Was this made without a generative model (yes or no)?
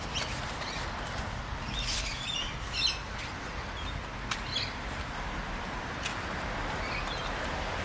yes